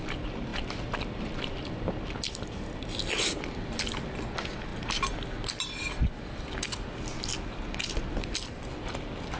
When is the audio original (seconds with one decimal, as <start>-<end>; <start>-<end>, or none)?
0.0-0.5; 1.7-9.4